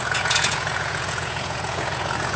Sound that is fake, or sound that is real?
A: fake